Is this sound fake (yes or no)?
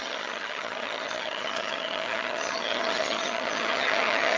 yes